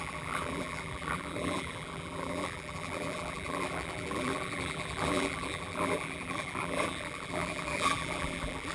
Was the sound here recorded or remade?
remade